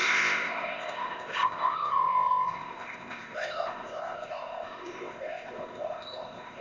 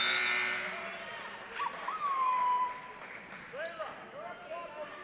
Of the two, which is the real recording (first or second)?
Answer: second